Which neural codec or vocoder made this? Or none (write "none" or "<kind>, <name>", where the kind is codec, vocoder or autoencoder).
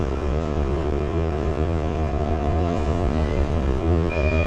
vocoder, Vocos